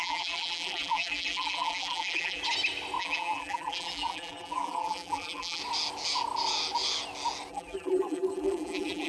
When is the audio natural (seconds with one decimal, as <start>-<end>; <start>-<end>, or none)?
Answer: 2.4-3.0; 5.6-7.5